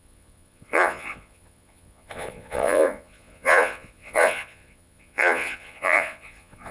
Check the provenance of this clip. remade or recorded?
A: remade